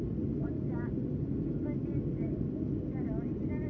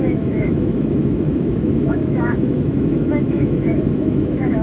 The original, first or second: first